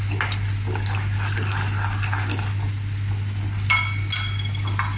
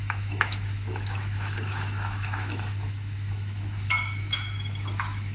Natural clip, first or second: first